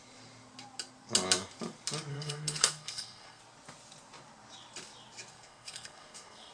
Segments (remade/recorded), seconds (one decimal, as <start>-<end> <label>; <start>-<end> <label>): 0.0-2.1 recorded; 2.1-3.4 remade; 3.4-5.3 recorded; 5.3-6.5 remade